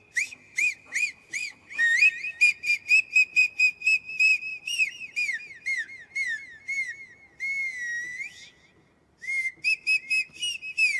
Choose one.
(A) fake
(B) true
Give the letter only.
B